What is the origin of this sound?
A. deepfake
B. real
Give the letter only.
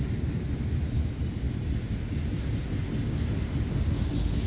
B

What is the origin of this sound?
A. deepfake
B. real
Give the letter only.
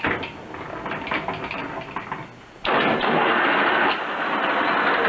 B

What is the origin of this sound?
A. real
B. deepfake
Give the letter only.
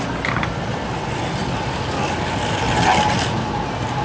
A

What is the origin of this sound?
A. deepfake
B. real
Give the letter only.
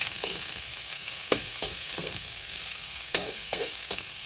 A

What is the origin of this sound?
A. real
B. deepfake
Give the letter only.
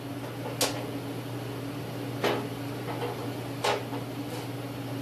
A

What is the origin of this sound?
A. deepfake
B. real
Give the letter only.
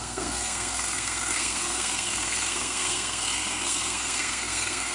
A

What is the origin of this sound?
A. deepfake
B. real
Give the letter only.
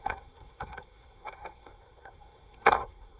A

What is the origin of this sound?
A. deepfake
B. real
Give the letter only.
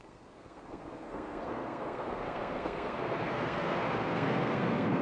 A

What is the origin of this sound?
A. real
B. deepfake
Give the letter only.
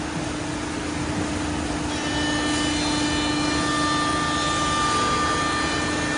A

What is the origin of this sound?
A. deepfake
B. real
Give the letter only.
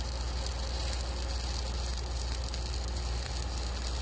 B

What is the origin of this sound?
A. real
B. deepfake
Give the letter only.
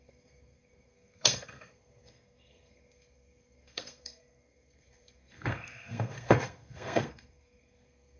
B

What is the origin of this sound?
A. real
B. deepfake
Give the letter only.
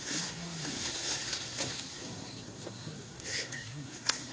B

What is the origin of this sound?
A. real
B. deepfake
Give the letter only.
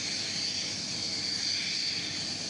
A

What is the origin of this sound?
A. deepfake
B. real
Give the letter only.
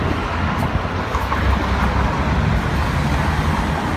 B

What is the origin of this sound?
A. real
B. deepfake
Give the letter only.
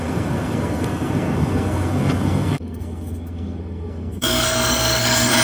B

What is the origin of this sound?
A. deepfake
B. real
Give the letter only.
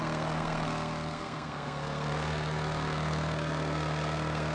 A